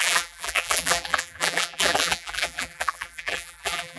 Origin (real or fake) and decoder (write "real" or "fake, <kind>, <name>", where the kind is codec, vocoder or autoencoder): fake, vocoder, BigVGAN v2